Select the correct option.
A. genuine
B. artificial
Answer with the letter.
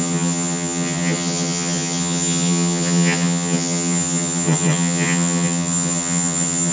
B